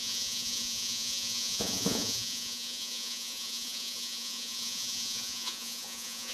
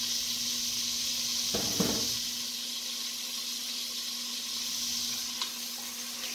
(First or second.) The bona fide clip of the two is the second